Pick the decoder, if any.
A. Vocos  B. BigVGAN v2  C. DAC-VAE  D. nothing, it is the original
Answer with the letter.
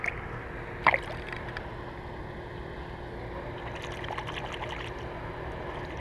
D